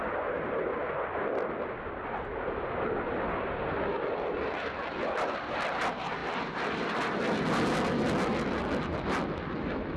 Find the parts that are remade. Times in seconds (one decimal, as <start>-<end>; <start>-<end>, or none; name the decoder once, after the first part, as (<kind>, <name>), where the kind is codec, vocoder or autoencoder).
none